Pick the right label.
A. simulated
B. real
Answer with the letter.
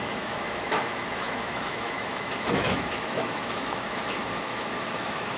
A